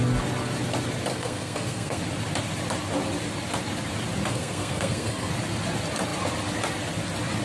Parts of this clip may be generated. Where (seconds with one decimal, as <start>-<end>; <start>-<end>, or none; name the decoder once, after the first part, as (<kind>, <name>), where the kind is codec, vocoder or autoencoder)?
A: 1.1-2.0 (codec, SNAC); 4.3-5.3